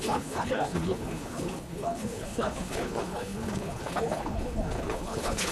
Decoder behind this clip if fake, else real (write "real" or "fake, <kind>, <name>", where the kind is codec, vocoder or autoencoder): fake, codec, HILCodec